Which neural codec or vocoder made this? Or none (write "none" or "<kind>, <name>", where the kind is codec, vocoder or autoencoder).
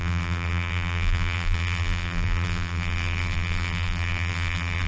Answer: vocoder, BigVGAN v2